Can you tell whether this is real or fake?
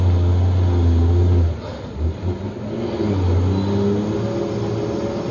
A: real